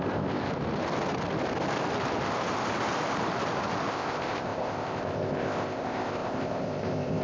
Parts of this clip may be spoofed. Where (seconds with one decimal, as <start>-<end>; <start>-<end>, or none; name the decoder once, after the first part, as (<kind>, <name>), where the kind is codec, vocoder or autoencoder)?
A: 0.0-0.5 (codec, ZipCodec); 3.9-7.2